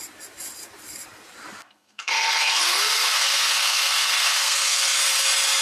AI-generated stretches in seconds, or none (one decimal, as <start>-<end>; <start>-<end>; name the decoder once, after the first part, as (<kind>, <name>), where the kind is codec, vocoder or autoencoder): 1.6-5.0 (codec, SNAC)